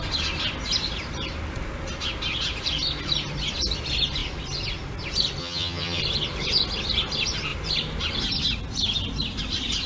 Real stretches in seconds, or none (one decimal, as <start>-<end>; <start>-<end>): 0.0-5.4; 6.0-9.9